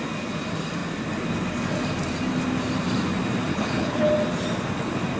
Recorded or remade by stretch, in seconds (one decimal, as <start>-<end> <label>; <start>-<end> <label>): 0.0-3.5 recorded; 3.5-4.1 remade; 4.1-5.2 recorded